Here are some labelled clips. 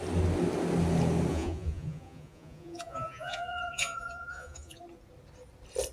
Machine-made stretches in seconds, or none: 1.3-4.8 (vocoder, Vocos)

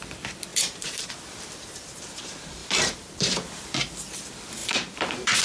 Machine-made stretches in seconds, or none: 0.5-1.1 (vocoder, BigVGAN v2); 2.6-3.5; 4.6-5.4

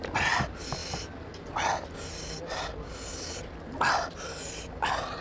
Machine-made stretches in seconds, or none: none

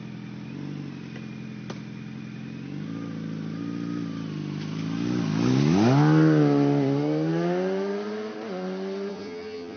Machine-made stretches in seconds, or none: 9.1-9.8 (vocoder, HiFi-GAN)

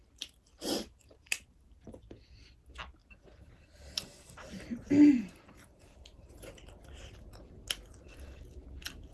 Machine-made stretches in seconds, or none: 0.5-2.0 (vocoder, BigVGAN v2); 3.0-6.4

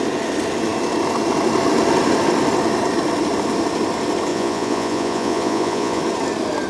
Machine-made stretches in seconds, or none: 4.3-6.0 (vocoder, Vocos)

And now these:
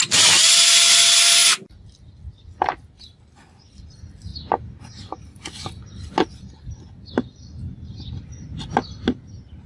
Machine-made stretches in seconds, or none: none